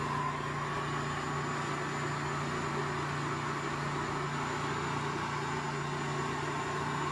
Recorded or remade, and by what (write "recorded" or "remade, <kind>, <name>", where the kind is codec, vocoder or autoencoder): recorded